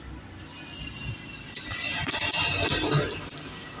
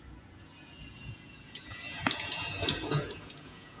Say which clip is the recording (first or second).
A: first